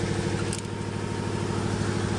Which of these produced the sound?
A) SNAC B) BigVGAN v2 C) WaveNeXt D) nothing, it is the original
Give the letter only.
D